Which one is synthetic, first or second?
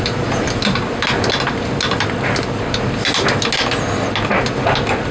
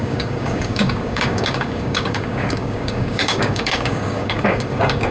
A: second